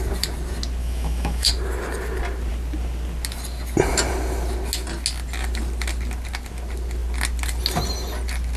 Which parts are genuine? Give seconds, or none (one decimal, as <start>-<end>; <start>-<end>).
0.0-0.8; 1.5-8.6